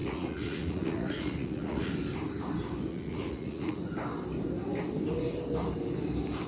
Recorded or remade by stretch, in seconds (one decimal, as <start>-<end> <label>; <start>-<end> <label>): 0.0-1.9 remade; 1.9-2.9 recorded; 2.9-3.8 remade; 3.8-6.5 recorded